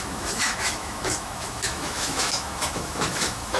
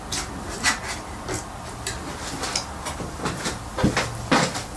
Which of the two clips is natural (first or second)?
second